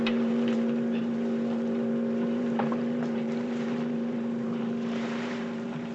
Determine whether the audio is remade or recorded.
remade